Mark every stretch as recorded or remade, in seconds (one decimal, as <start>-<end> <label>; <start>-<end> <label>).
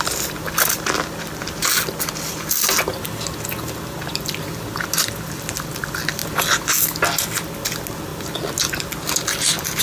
0.0-9.8 recorded